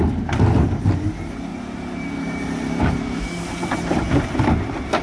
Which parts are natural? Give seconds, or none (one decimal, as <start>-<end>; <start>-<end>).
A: 0.0-1.5; 4.2-5.0